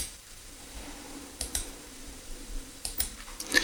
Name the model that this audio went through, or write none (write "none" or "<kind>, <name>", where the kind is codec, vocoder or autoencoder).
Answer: vocoder, BigVGAN v2